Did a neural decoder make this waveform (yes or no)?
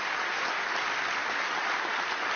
no